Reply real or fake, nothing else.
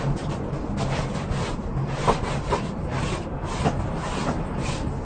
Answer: real